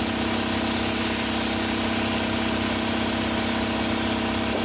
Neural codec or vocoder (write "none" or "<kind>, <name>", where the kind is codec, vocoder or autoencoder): none